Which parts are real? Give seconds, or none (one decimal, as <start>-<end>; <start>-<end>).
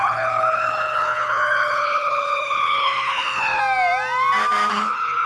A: 3.6-4.7